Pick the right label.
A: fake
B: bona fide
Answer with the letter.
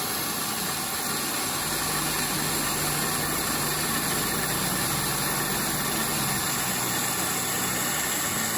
B